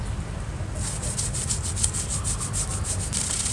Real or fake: real